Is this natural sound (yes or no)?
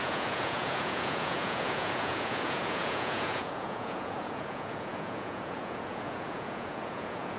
no